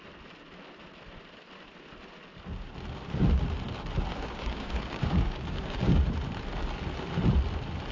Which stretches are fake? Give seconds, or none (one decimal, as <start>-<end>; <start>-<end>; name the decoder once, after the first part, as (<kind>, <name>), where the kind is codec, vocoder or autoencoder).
4.1-6.0 (codec, DAC)